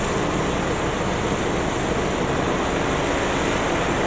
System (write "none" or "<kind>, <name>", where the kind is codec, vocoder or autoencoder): none